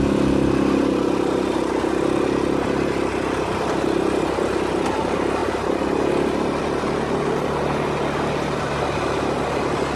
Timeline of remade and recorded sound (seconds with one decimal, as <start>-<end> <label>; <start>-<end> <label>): 0.0-10.0 recorded